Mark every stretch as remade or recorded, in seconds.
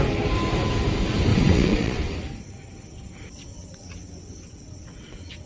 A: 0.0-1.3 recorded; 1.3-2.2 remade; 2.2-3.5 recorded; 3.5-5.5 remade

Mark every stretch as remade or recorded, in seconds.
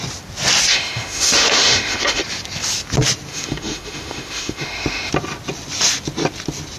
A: 0.0-0.7 recorded; 0.7-2.2 remade; 2.2-3.3 recorded; 3.3-5.1 remade; 5.1-6.8 recorded